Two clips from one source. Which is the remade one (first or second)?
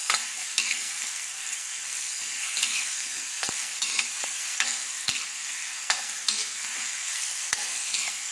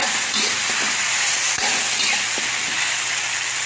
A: first